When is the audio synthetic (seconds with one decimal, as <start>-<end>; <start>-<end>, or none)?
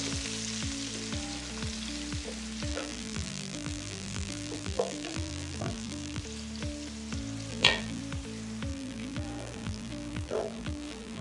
2.7-6.2; 7.5-8.0; 8.7-11.2